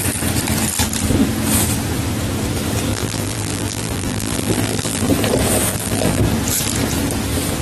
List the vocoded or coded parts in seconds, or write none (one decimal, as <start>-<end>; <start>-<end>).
2.9-5.1; 5.7-6.2